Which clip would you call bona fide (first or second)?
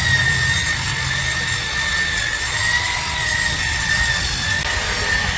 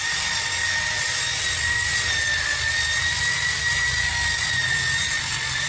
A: first